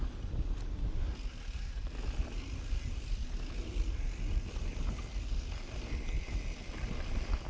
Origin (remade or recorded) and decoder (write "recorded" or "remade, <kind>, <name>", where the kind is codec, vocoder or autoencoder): recorded